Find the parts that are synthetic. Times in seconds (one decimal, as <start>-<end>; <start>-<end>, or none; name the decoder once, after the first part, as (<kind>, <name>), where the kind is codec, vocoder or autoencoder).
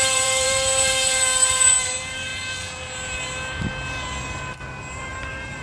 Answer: 0.0-2.3 (vocoder, BigVGAN v2); 4.8-5.6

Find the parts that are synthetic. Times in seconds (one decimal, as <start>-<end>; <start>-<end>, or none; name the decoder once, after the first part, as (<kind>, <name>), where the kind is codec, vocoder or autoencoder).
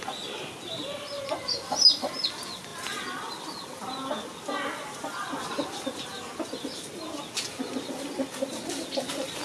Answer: none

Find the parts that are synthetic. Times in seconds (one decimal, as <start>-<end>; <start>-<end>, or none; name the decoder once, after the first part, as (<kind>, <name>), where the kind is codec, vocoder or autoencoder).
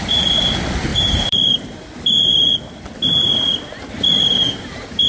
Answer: 0.9-2.5 (vocoder, BigVGAN v2); 4.3-5.1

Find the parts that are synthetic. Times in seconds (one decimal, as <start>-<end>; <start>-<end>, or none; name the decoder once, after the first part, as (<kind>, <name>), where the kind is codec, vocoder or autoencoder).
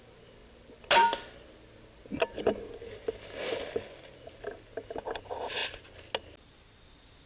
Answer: none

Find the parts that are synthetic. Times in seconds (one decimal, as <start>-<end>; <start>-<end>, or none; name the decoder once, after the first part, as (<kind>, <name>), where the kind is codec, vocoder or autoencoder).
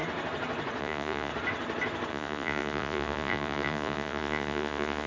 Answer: 0.8-1.3 (vocoder, Vocos); 2.1-5.1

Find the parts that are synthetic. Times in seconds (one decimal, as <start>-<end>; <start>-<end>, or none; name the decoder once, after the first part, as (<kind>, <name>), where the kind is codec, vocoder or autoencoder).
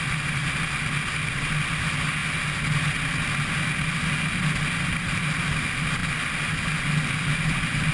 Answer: none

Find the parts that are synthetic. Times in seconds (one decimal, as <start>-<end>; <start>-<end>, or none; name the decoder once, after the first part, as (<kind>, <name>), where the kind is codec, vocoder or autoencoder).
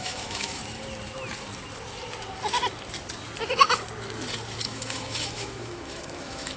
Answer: 0.0-0.6 (autoencoder, DAC-VAE); 4.6-6.6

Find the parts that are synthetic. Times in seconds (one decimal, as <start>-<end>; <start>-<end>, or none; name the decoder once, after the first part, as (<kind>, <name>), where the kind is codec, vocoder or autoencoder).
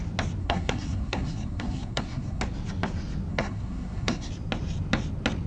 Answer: 0.4-2.4 (codec, SNAC); 3.3-4.3